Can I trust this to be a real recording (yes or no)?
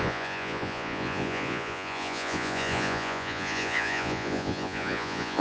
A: no